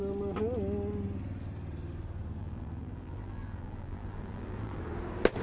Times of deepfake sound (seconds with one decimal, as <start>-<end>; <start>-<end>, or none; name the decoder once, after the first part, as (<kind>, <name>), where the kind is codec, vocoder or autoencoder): 2.4-4.8 (vocoder, BigVGAN v2)